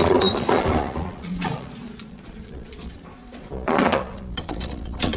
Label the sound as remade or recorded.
remade